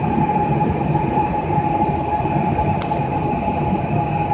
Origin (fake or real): real